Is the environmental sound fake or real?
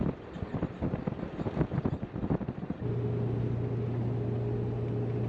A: real